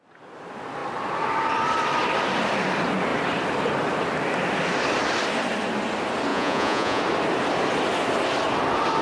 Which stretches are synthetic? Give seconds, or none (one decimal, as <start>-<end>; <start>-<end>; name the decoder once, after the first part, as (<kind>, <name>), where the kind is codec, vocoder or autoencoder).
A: 6.3-7.0 (vocoder, Vocos)